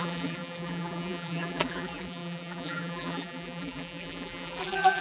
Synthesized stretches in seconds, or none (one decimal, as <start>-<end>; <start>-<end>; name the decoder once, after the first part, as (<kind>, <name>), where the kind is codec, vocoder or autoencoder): 0.0-5.0 (vocoder, BigVGAN v2)